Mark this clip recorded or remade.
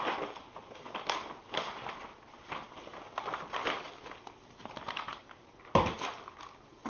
recorded